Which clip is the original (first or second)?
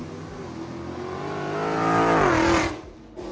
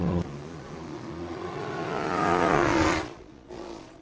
first